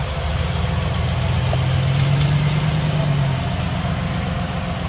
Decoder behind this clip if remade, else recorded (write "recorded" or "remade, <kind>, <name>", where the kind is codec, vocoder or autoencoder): recorded